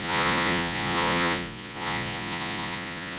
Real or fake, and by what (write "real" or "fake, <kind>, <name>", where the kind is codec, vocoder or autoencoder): fake, vocoder, Vocos